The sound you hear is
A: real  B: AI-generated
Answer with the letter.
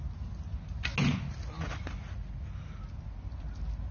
A